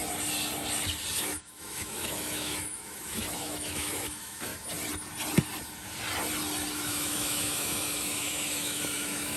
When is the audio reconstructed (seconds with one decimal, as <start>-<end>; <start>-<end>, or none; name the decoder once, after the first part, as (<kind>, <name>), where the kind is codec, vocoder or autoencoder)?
1.1-4.5 (autoencoder, DAC-VAE); 6.7-9.4